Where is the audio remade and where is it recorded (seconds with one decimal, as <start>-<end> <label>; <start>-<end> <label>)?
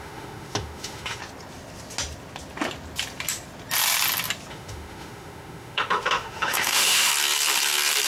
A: 0.0-1.2 remade; 1.2-4.5 recorded; 4.5-7.1 remade; 7.1-8.1 recorded